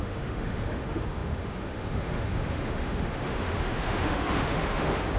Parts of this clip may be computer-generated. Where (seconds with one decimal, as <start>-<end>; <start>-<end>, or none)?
0.0-5.2